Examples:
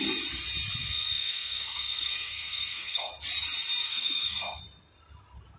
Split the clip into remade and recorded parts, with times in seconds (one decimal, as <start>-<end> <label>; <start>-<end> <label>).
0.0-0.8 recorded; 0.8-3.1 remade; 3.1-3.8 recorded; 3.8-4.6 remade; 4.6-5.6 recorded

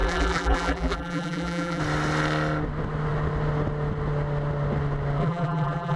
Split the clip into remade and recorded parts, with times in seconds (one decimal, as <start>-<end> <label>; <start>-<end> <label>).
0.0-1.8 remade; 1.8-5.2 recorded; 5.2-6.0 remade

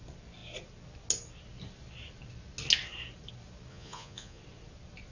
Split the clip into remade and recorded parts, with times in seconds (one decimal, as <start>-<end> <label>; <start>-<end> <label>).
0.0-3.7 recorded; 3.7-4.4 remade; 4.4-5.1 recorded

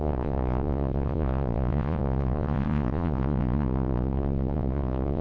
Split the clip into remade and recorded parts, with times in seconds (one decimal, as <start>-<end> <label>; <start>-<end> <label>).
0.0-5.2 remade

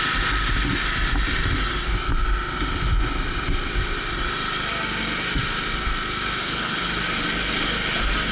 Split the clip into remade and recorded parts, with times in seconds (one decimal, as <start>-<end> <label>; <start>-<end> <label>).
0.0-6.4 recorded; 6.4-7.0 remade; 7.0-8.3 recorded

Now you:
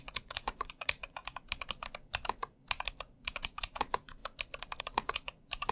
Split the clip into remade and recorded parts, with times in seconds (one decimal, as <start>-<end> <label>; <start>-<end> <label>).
0.0-1.2 remade; 1.2-3.2 recorded; 3.2-4.2 remade; 4.2-4.8 recorded; 4.8-5.7 remade

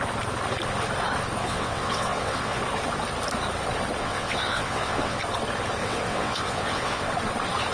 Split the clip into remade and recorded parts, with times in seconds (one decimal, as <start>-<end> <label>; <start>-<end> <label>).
0.0-1.4 recorded; 1.4-2.6 remade; 2.6-4.0 recorded; 4.0-5.2 remade; 5.2-5.8 recorded; 5.8-7.1 remade; 7.1-7.7 recorded